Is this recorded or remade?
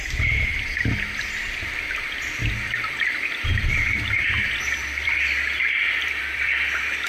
remade